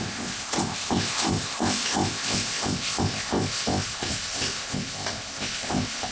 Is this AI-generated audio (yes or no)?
yes